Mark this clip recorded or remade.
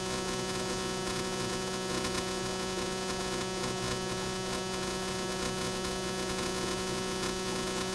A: remade